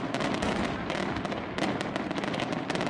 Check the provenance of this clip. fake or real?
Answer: real